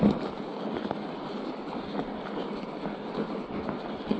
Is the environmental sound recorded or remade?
recorded